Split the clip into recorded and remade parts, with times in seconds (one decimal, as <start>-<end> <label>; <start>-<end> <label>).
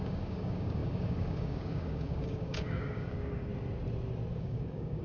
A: 0.0-3.5 remade; 3.5-4.3 recorded; 4.3-5.0 remade